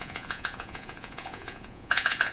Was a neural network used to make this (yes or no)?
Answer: yes